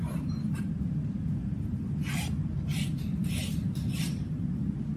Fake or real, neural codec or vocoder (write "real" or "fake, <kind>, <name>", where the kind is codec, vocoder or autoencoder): fake, vocoder, BigVGAN v2